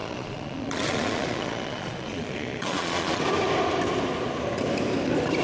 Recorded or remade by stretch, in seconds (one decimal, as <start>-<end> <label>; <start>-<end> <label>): 0.0-3.2 remade; 3.2-5.4 recorded